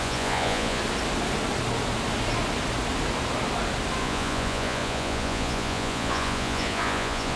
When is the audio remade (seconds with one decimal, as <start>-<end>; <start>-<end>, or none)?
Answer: 0.0-0.8; 4.0-7.4